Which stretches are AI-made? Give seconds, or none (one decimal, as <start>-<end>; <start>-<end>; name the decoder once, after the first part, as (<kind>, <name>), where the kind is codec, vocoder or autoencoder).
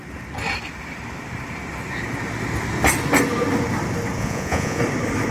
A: 4.2-4.8 (vocoder, Vocos)